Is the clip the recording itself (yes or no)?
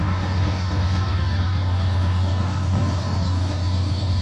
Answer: no